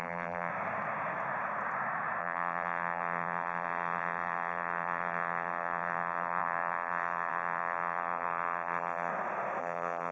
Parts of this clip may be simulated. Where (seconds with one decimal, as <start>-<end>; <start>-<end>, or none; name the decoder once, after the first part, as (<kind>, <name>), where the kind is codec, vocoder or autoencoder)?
0.0-0.5 (vocoder, BigVGAN v2); 2.2-9.1; 9.6-10.1